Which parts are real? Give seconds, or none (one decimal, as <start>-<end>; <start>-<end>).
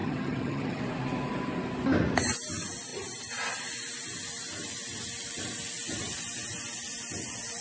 0.8-7.6